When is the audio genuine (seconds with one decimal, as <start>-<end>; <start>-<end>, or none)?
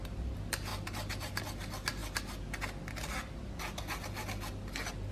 0.0-5.1